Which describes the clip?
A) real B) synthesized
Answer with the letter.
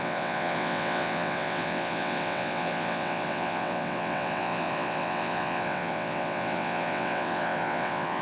B